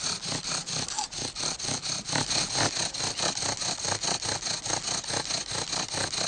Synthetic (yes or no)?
no